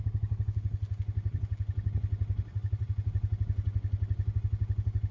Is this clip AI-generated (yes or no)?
no